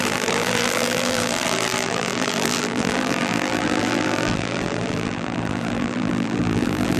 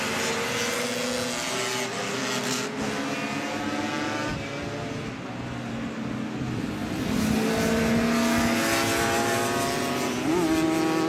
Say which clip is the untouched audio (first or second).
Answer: second